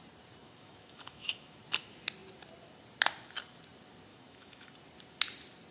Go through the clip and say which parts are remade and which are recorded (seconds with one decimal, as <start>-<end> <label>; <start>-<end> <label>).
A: 0.0-0.4 recorded; 0.4-1.6 remade; 1.6-4.1 recorded; 4.1-4.7 remade; 4.7-5.7 recorded